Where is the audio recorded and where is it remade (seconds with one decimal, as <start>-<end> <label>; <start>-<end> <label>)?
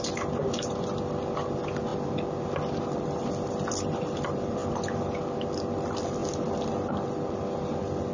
0.0-4.6 remade; 4.6-5.2 recorded; 5.2-6.2 remade; 6.2-6.9 recorded; 6.9-8.1 remade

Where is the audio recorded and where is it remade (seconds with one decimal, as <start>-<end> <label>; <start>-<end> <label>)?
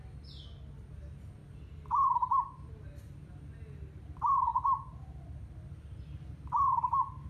0.0-1.4 recorded; 1.4-2.8 remade; 2.8-7.3 recorded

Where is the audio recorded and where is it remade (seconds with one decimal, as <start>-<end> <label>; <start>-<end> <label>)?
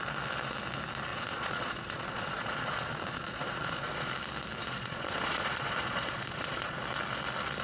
0.0-1.1 recorded; 1.1-4.1 remade; 4.1-4.6 recorded; 4.6-6.8 remade; 6.8-7.6 recorded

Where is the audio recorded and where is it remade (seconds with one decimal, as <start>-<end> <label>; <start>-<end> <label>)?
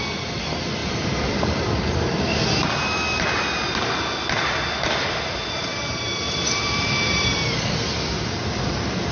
0.0-0.8 recorded; 0.8-2.1 remade; 2.1-5.7 recorded; 5.7-7.2 remade; 7.2-9.1 recorded